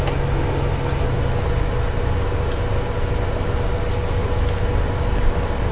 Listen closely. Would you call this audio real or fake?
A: real